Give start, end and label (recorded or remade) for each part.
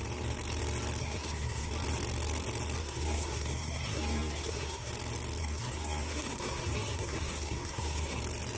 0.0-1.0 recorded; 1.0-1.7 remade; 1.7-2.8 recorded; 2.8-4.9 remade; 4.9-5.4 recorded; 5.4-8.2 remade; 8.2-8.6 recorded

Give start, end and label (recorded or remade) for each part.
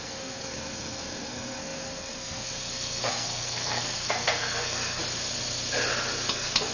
0.0-5.0 remade; 5.0-6.3 recorded; 6.3-6.7 remade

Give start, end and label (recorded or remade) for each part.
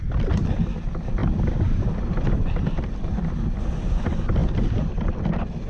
0.0-5.7 recorded